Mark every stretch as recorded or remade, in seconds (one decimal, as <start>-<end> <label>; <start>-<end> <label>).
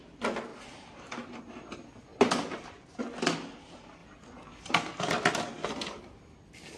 0.0-0.5 recorded; 0.5-1.4 remade; 1.4-2.1 recorded; 2.1-3.0 remade; 3.0-6.8 recorded